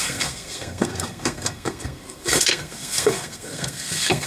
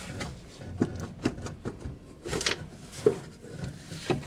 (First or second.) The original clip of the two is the second